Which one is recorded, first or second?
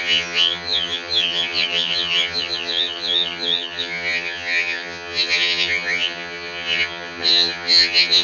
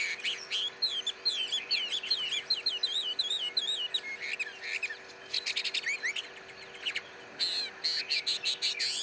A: second